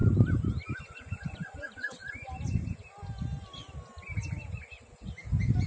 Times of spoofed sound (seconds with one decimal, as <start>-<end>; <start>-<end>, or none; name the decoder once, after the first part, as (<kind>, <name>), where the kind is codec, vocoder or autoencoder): 0.8-2.0 (vocoder, Vocos)